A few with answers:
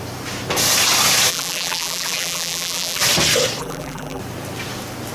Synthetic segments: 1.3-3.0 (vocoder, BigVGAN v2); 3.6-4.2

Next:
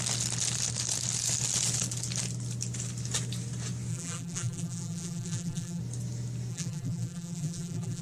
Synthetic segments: 3.9-5.8 (vocoder, BigVGAN v2); 6.5-8.0

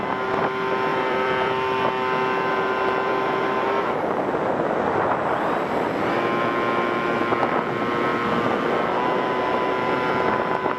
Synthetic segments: 0.9-1.8 (vocoder, BigVGAN v2)

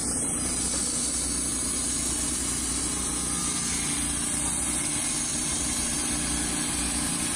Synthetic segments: 0.0-0.6 (vocoder, BigVGAN v2); 5.3-6.1

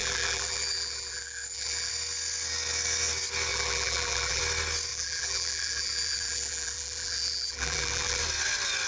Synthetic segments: 0.0-1.9 (vocoder, BigVGAN v2); 3.5-4.4; 4.9-8.2

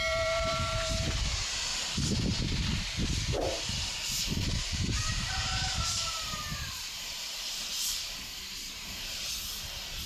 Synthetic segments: 0.0-1.7 (vocoder, BigVGAN v2); 3.6-5.5; 6.7-10.1

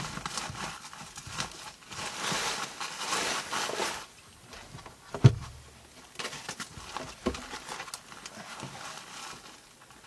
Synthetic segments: 3.8-4.6 (vocoder, BigVGAN v2)